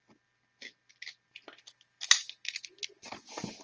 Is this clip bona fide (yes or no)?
yes